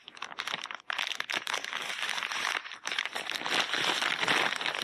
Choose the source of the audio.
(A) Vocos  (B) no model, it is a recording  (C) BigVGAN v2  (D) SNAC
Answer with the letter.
B